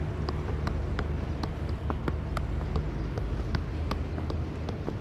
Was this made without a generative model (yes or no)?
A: yes